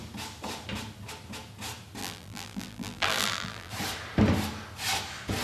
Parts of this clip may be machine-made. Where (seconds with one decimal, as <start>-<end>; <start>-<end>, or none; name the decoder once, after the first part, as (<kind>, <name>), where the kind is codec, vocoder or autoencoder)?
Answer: 2.0-3.7 (vocoder, BigVGAN v2)